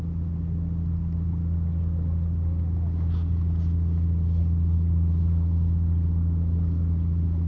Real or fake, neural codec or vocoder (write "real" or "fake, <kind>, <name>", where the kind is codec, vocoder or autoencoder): real